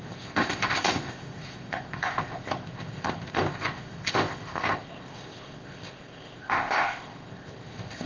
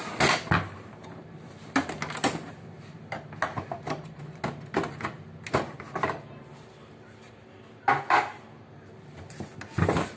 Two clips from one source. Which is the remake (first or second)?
first